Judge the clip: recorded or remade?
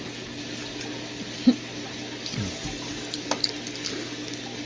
recorded